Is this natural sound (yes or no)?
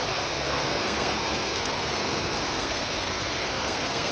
no